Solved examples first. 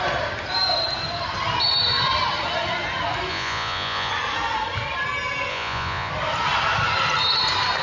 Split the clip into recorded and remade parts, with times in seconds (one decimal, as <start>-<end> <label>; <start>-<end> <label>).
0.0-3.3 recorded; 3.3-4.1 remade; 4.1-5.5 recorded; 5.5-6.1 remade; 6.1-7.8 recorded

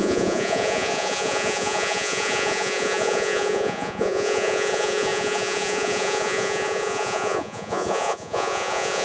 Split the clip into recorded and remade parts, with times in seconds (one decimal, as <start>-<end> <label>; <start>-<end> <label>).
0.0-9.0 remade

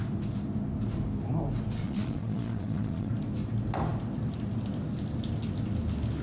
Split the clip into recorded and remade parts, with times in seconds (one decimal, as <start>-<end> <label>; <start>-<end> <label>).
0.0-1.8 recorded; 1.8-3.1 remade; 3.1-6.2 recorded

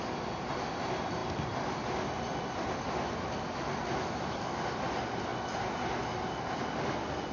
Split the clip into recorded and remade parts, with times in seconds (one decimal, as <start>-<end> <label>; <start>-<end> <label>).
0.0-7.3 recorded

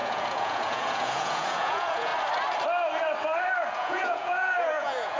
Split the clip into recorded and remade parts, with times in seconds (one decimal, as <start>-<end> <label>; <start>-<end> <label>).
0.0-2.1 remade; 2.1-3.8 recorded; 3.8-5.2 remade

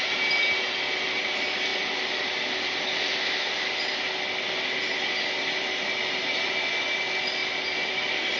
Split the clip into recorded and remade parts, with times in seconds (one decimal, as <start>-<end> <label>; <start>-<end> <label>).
0.0-8.4 recorded

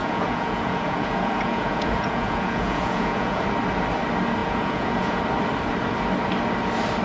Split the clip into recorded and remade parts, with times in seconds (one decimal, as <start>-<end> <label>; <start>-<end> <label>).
0.0-3.4 remade; 3.4-4.4 recorded; 4.4-5.2 remade; 5.2-7.0 recorded